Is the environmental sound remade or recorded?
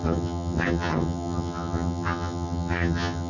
remade